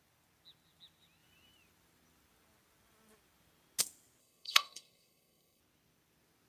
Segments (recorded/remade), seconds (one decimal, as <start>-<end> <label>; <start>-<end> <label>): 0.0-4.2 recorded; 4.2-5.6 remade; 5.6-6.5 recorded